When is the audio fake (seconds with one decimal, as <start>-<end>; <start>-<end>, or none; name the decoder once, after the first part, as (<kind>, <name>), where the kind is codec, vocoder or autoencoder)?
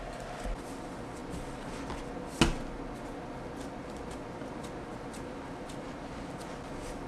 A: none